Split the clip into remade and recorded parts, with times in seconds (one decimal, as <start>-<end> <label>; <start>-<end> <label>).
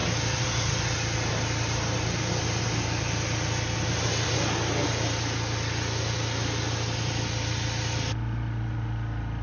0.0-9.4 recorded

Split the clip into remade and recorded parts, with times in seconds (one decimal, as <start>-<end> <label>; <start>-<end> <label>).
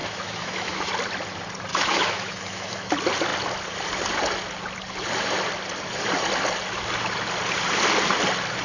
0.0-0.9 remade; 0.9-1.7 recorded; 1.7-2.9 remade; 2.9-8.6 recorded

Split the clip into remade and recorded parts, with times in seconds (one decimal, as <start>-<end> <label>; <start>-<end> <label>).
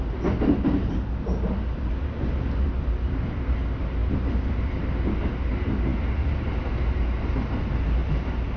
0.0-8.6 recorded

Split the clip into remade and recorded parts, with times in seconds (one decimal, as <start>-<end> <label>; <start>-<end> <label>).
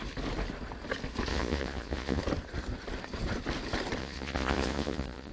0.0-1.3 recorded; 1.3-2.2 remade; 2.2-4.0 recorded; 4.0-5.3 remade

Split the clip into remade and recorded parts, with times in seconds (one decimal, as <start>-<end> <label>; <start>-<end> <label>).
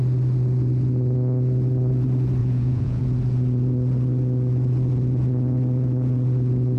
0.0-2.4 recorded; 2.4-3.0 remade; 3.0-6.8 recorded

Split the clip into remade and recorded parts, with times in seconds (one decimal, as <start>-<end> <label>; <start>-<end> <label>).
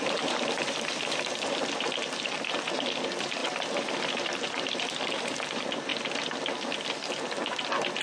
0.0-5.9 remade; 5.9-8.0 recorded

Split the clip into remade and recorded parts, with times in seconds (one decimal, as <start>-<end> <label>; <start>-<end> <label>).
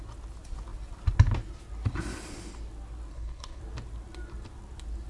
0.0-3.1 recorded; 3.1-3.6 remade; 3.6-5.1 recorded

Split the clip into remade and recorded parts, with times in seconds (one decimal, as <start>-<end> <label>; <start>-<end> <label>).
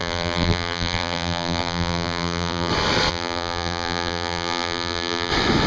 0.0-2.7 remade; 2.7-3.1 recorded; 3.1-5.3 remade; 5.3-5.7 recorded